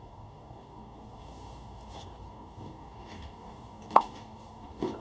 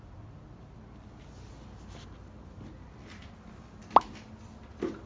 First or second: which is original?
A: second